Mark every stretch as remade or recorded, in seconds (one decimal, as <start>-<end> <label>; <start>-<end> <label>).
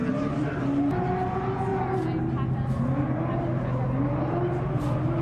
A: 0.0-5.2 recorded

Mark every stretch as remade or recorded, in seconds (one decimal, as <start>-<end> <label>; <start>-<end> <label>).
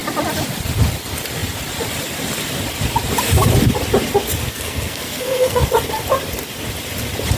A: 0.0-4.4 recorded; 4.4-5.7 remade; 5.7-7.4 recorded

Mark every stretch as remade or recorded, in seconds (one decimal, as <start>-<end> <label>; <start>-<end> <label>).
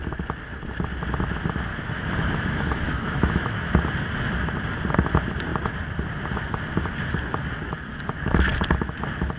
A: 0.0-1.7 recorded; 1.7-3.7 remade; 3.7-9.4 recorded